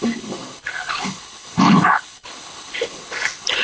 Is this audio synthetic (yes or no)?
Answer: yes